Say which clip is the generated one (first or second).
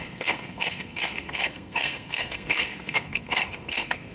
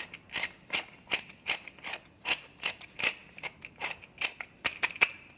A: first